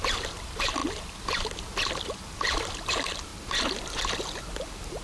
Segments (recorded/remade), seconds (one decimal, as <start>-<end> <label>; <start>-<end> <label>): 0.0-0.8 remade; 0.8-2.9 recorded; 2.9-3.3 remade; 3.3-4.4 recorded; 4.4-5.0 remade